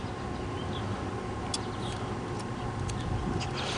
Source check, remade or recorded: recorded